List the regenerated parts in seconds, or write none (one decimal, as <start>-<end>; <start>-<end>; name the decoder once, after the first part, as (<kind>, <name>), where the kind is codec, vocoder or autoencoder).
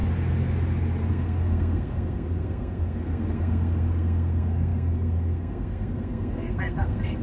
1.1-7.2 (codec, SNAC)